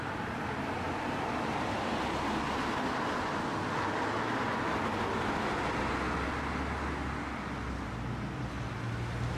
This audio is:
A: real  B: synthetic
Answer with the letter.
A